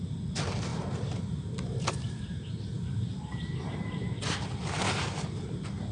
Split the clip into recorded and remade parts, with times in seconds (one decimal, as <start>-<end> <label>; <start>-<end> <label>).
0.0-0.7 recorded; 0.7-4.2 remade; 4.2-5.9 recorded